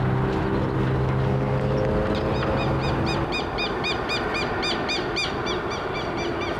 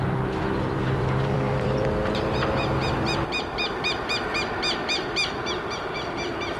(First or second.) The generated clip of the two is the second